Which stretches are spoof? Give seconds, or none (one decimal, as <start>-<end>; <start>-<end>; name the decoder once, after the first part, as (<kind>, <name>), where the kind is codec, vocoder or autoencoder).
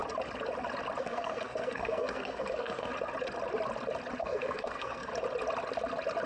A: 1.0-2.9 (codec, SNAC); 4.2-5.1